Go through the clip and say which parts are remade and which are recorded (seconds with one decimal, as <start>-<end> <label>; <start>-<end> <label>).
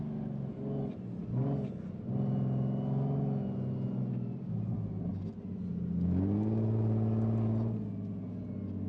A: 0.0-8.9 recorded